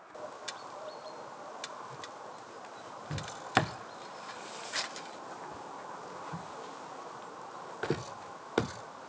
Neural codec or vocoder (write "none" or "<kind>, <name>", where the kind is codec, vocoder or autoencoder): none